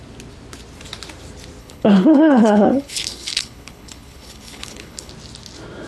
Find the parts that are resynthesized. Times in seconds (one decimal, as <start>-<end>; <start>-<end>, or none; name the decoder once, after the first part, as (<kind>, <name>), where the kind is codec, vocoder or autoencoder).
1.6-5.1 (codec, HILCodec)